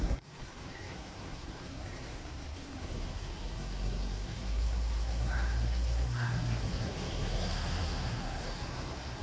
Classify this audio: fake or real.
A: fake